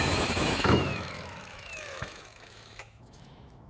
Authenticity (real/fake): fake